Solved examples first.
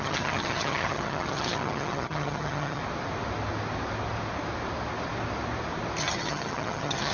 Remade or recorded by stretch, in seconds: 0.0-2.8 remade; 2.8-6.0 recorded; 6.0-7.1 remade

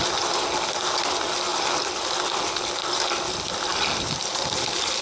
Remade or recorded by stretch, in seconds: 0.0-5.0 recorded

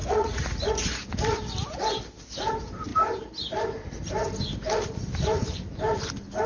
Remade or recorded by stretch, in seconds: 0.0-0.7 remade; 0.7-6.5 recorded

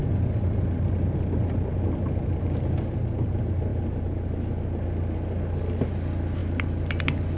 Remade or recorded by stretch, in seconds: 0.0-7.4 recorded

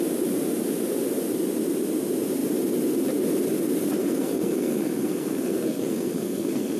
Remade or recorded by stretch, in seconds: 0.0-4.0 recorded; 4.0-6.8 remade